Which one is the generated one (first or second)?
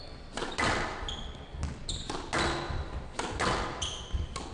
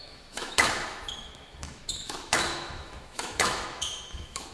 second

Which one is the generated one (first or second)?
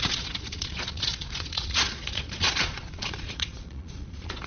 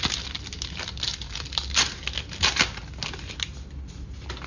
first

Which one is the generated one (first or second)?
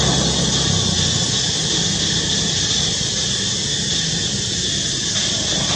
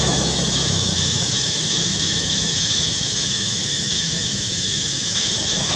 second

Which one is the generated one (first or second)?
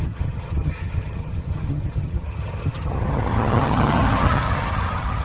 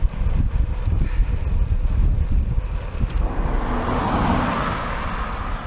first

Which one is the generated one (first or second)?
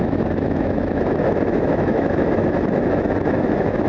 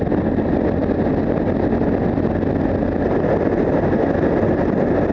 first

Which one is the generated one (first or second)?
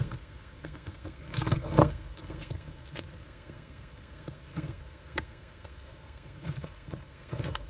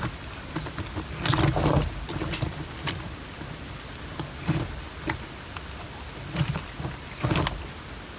first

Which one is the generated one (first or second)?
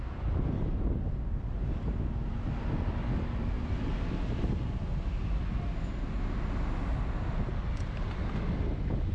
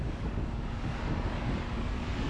second